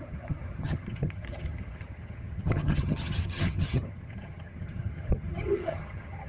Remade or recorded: remade